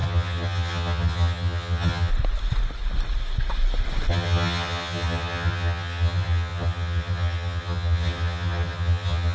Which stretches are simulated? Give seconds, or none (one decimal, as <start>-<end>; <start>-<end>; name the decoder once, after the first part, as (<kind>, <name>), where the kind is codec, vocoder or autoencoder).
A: 0.0-2.1 (vocoder, HiFi-GAN); 4.1-9.3